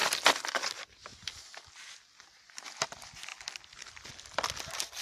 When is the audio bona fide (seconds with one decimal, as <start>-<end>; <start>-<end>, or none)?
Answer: 0.0-5.0